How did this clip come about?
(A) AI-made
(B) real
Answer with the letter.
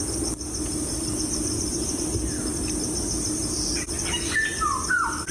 B